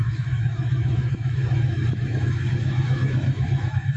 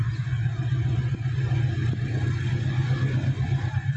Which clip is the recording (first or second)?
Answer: second